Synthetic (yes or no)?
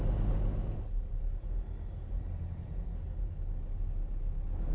no